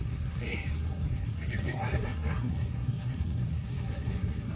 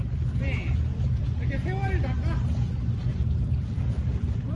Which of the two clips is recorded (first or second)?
second